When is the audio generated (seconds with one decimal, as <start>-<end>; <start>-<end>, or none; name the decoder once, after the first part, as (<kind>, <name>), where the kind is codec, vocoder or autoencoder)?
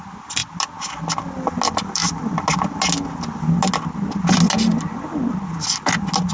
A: none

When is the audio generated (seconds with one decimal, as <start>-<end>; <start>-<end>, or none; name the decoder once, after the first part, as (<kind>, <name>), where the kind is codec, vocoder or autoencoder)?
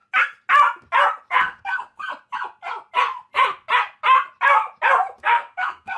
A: 1.3-2.1 (codec, SNAC); 5.2-6.0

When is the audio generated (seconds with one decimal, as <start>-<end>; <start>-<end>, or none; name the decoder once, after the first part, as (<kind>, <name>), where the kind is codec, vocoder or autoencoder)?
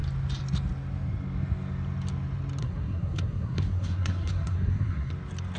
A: 2.6-5.1 (codec, SNAC)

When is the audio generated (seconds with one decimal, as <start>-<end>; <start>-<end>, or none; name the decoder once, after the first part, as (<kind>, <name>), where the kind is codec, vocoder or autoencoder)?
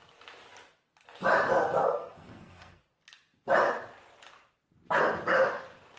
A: 1.8-2.8 (codec, SNAC)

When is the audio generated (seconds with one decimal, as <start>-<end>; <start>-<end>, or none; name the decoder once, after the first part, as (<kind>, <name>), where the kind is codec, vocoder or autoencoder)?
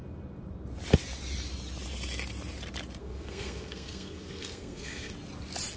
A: 3.0-5.1 (codec, SNAC)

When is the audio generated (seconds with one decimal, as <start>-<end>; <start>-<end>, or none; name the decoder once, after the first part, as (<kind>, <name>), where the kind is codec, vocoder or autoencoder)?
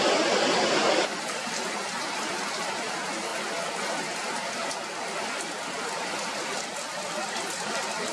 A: none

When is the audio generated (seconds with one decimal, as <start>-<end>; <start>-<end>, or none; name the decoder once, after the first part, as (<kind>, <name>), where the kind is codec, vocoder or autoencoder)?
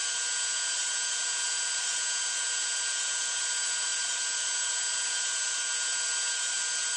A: none